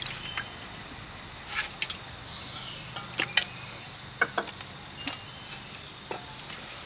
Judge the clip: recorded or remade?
recorded